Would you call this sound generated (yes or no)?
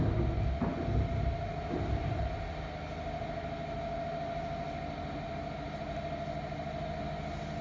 no